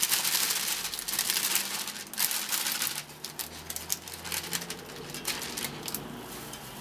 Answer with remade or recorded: recorded